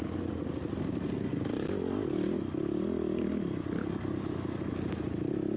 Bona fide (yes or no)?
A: yes